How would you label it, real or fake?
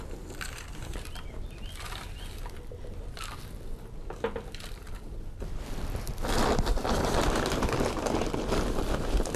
real